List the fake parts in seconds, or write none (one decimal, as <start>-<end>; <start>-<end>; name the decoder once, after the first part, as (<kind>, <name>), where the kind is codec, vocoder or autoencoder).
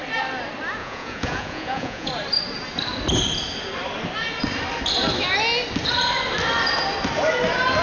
0.8-2.1 (vocoder, Vocos)